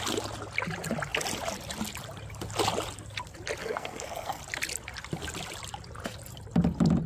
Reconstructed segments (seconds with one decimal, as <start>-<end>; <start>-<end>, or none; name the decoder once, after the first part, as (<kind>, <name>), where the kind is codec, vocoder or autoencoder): 3.6-4.4 (codec, SNAC)